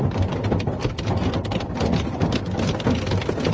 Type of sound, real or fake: real